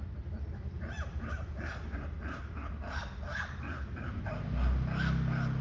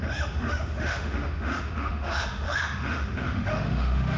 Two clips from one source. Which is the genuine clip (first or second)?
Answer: first